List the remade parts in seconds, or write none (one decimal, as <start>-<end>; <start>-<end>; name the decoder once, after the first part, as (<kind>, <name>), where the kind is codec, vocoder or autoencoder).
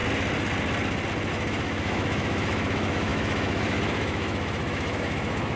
1.3-5.6 (autoencoder, DAC-VAE)